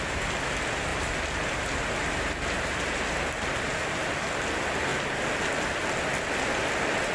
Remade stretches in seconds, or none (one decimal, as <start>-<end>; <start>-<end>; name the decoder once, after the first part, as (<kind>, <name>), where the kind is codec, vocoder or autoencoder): 0.9-4.1 (vocoder, BigVGAN v2)